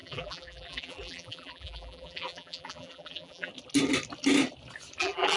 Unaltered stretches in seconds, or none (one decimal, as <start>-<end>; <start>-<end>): 3.5-5.0